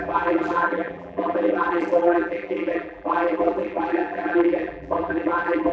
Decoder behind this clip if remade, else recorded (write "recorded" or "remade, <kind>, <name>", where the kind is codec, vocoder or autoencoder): remade, vocoder, BigVGAN v2